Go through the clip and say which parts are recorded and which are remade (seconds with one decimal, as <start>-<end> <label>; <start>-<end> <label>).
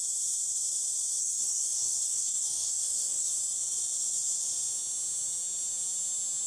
0.0-1.2 recorded; 1.2-3.3 remade; 3.3-6.5 recorded